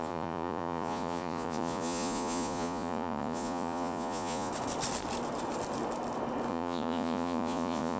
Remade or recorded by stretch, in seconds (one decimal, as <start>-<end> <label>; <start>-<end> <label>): 0.0-4.5 remade; 4.5-6.5 recorded; 6.5-8.0 remade